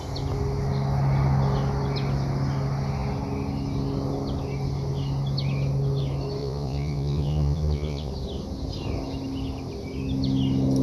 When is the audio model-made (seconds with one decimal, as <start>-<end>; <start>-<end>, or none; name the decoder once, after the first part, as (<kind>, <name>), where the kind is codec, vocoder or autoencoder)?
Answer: 6.4-8.1 (vocoder, Vocos)